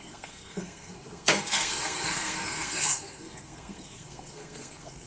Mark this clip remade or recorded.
remade